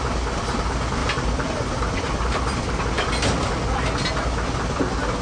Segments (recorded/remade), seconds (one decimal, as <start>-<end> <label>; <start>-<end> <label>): 0.0-1.0 recorded; 1.0-2.8 remade; 2.8-5.2 recorded